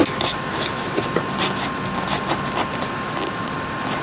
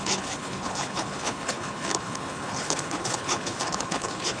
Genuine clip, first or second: first